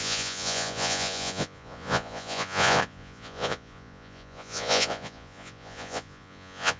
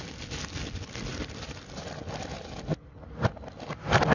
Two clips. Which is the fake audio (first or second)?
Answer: first